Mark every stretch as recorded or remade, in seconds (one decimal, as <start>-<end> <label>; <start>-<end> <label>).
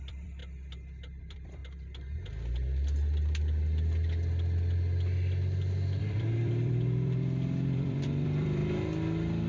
0.0-0.4 remade; 0.4-1.2 recorded; 1.2-1.6 remade; 1.6-6.0 recorded; 6.0-8.6 remade; 8.6-9.5 recorded